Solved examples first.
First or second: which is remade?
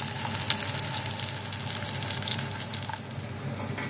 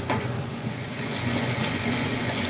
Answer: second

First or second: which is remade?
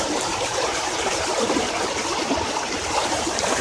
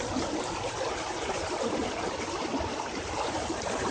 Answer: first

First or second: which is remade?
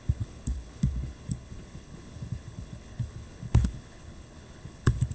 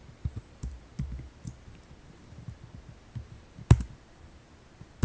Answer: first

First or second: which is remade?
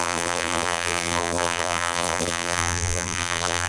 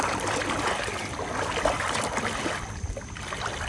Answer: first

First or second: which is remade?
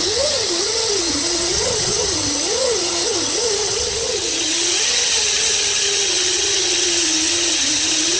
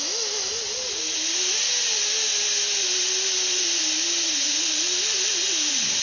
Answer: first